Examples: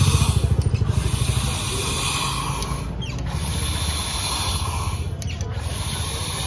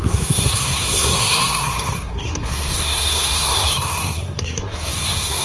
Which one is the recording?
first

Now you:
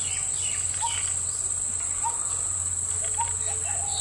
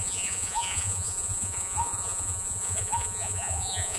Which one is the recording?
first